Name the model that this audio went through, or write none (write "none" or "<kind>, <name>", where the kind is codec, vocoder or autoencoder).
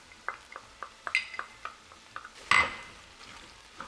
none